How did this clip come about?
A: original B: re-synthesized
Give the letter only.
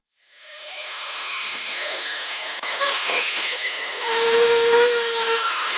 B